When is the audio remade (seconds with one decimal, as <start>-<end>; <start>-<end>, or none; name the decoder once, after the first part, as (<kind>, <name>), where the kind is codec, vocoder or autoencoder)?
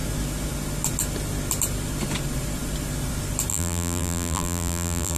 3.5-5.2 (vocoder, BigVGAN v2)